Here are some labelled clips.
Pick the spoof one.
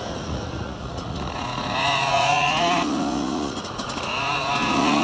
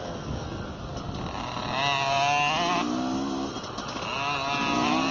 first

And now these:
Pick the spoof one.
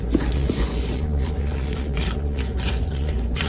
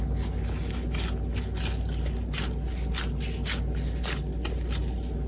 first